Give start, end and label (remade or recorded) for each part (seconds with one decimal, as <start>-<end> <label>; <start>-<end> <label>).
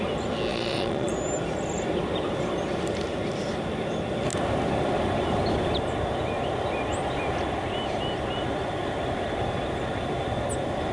0.0-0.5 recorded; 0.5-1.1 remade; 1.1-10.9 recorded